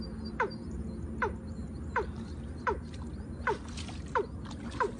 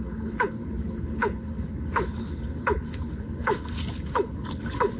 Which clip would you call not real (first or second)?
second